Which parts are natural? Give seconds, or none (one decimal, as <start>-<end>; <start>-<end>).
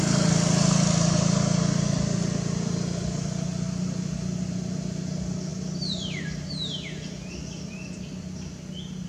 0.0-5.5; 6.5-9.1